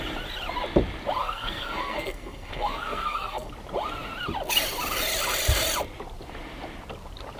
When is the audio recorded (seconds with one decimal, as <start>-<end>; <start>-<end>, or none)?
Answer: 0.0-1.2; 3.5-7.4